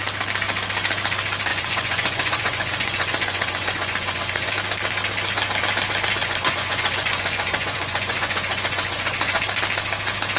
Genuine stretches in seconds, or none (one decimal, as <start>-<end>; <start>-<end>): 0.0-1.5; 4.5-6.2; 9.4-10.4